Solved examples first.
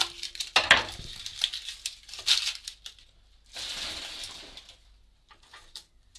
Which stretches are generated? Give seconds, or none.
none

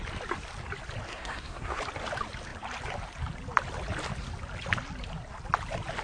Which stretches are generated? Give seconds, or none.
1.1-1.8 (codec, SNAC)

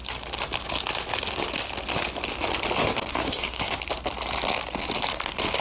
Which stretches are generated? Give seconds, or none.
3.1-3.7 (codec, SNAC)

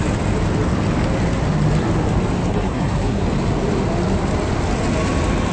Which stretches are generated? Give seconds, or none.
2.5-3.2 (codec, SNAC)

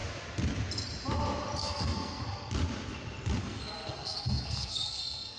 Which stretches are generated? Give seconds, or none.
1.6-2.5 (codec, SNAC); 3.4-5.4

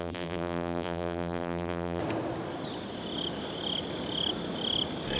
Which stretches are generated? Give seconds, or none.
0.0-2.0 (vocoder, BigVGAN v2)

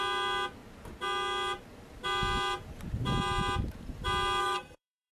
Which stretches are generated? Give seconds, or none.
4.4-5.1 (codec, SNAC)